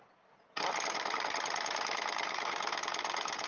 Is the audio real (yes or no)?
yes